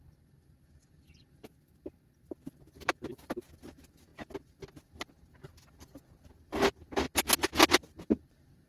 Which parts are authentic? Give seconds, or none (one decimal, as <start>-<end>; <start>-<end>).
0.0-8.7